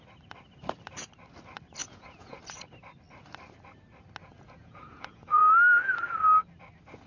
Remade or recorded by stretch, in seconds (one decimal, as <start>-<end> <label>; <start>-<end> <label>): 0.0-1.8 recorded; 1.8-2.4 remade; 2.4-4.2 recorded; 4.2-5.4 remade; 5.4-7.1 recorded